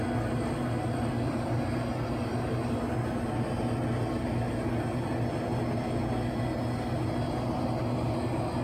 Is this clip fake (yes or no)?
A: no